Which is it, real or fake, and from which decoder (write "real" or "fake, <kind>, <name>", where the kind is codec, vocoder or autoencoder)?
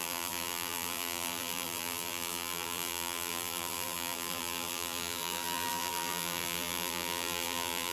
fake, vocoder, BigVGAN v2